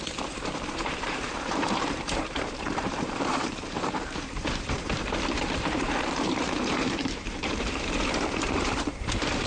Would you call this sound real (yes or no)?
no